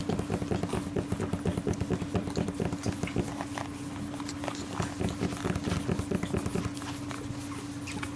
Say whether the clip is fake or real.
real